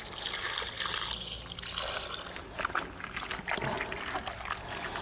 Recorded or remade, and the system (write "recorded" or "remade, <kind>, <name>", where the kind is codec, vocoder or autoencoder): recorded